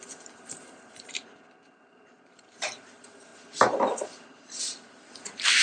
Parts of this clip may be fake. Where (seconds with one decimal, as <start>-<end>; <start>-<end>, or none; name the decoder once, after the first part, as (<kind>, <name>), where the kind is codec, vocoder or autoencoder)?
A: 0.0-3.3 (vocoder, BigVGAN v2)